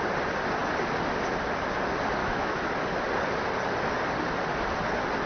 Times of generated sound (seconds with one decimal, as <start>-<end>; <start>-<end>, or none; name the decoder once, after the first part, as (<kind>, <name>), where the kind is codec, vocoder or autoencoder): 2.2-2.7 (autoencoder, DAC-VAE)